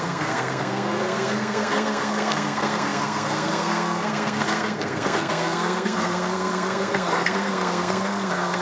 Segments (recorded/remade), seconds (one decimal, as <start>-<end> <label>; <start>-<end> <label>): 0.0-8.6 remade